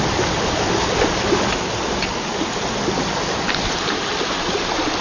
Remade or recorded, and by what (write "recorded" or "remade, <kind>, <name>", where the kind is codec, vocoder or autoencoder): recorded